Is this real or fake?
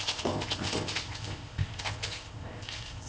fake